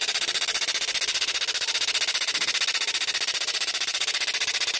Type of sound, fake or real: real